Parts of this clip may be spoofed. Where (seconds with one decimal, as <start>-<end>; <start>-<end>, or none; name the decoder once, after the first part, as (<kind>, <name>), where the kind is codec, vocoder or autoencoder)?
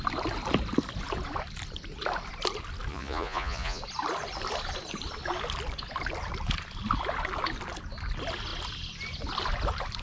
2.9-3.8 (vocoder, Vocos)